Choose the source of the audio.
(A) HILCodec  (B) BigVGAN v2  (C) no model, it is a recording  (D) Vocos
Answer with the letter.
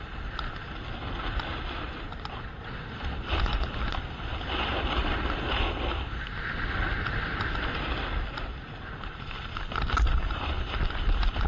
C